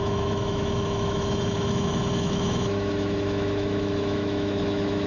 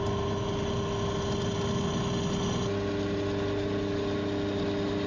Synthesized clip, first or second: first